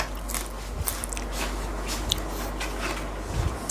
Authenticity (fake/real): real